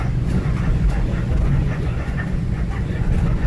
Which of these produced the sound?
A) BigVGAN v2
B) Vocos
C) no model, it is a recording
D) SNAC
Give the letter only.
B